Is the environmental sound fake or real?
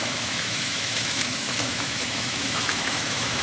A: fake